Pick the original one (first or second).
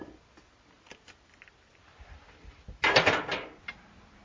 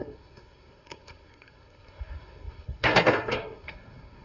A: first